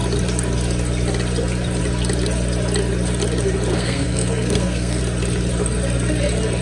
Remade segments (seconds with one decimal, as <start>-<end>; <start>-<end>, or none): 3.7-5.0

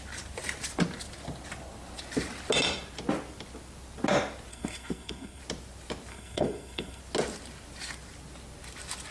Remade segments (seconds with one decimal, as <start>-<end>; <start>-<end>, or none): 4.5-5.4; 6.1-7.0

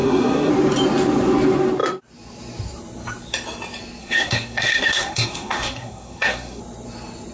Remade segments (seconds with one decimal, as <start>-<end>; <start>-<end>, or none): 0.0-0.5; 4.0-6.6

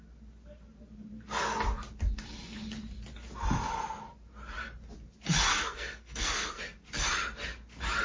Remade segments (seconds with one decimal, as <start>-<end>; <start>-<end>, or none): 5.5-6.6

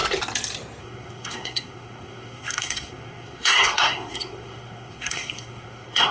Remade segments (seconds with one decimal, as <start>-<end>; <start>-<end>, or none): 0.8-6.1